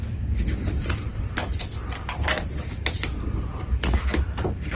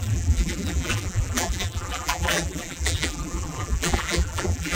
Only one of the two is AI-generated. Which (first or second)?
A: second